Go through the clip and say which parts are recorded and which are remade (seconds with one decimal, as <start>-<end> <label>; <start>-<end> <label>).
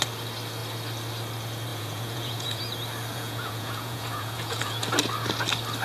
0.0-1.7 recorded; 1.7-2.6 remade; 2.6-3.1 recorded; 3.1-4.8 remade; 4.8-5.8 recorded